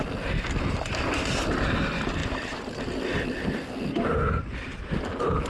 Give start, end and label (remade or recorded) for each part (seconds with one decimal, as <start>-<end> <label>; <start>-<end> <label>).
0.0-2.2 recorded; 2.2-3.7 remade; 3.7-5.5 recorded